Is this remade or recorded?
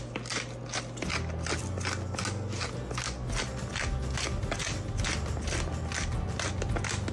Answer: recorded